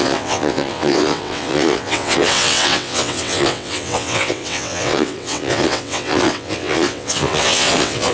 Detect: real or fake fake